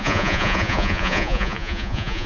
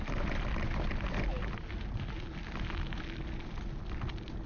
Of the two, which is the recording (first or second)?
second